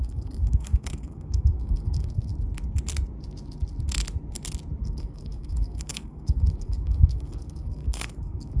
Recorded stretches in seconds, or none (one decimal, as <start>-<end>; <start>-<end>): 2.3-4.8